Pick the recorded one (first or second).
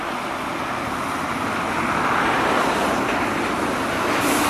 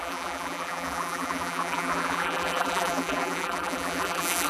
first